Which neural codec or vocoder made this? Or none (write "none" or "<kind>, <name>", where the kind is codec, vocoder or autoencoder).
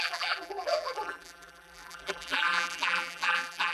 vocoder, BigVGAN v2